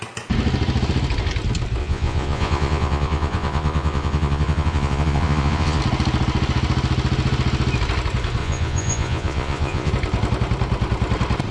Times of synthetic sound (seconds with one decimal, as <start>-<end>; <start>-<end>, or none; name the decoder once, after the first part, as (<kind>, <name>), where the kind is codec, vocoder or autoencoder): 1.8-5.8 (vocoder, Vocos); 8.4-9.9